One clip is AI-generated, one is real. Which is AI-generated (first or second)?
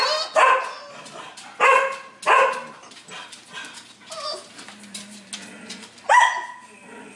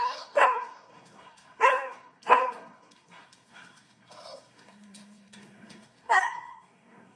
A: second